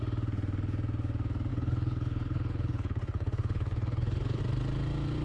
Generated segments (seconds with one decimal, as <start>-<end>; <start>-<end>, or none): 1.5-4.4